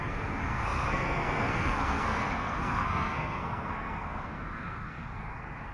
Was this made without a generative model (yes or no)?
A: no